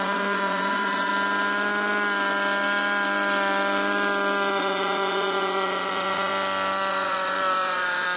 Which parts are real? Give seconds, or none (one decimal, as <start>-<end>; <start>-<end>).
1.1-4.5; 6.3-6.9